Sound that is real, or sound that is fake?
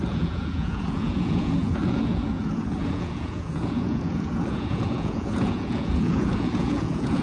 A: fake